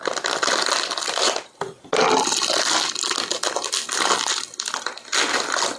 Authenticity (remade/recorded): recorded